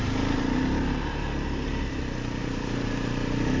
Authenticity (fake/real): fake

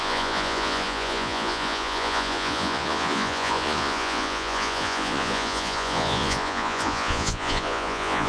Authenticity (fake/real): fake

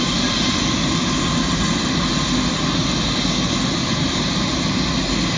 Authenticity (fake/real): real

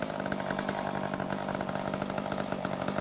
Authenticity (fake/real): real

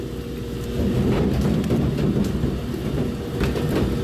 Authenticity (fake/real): real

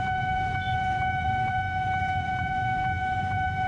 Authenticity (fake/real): fake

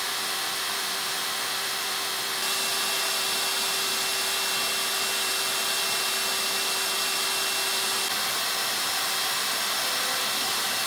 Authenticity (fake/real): real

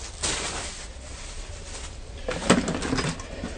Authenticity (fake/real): real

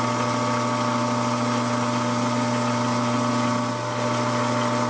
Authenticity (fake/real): real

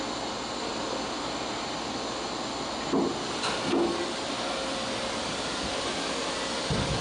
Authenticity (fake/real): real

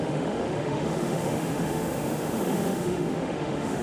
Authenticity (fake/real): fake